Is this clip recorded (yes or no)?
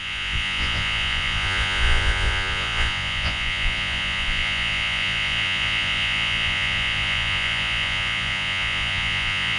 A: no